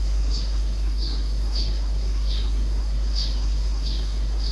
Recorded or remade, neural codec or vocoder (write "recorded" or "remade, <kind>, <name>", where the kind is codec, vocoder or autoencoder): remade, codec, SNAC